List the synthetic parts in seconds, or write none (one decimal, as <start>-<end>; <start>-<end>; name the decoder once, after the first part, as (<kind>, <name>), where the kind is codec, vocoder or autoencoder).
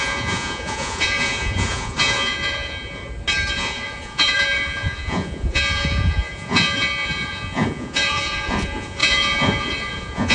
0.0-3.0 (vocoder, Vocos); 3.5-10.3